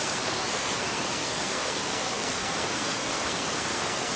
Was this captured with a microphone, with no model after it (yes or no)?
no